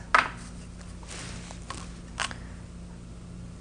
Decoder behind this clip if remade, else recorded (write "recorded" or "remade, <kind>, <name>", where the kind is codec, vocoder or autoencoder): recorded